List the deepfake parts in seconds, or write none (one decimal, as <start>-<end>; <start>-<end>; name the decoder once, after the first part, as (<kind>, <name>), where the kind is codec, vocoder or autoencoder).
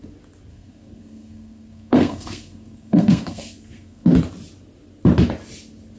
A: 0.5-4.1 (codec, SNAC)